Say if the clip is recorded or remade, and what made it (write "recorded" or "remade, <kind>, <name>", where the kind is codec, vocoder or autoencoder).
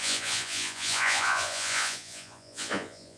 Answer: remade, vocoder, Vocos